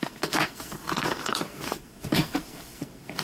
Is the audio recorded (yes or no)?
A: no